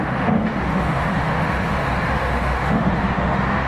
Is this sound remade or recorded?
remade